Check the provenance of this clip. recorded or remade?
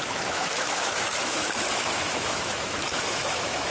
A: remade